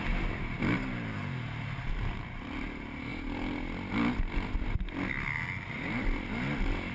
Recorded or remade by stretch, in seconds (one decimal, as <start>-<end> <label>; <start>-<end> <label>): 0.0-6.9 recorded

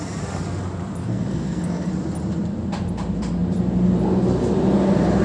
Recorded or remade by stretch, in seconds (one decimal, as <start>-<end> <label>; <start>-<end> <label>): 0.0-1.0 recorded; 1.0-1.9 remade; 1.9-5.2 recorded